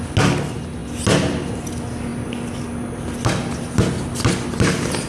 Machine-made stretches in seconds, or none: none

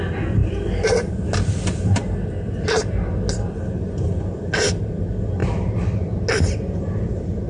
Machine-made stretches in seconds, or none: none

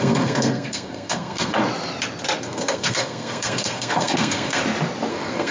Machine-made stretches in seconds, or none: 0.0-1.6 (codec, SNAC); 2.4-4.6; 5.1-5.5